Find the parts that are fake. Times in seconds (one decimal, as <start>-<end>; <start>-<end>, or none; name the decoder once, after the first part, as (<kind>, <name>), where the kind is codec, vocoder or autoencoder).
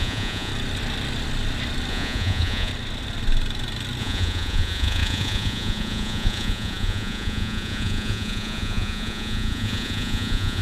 0.0-0.5 (vocoder, Vocos); 1.9-2.7; 4.0-10.6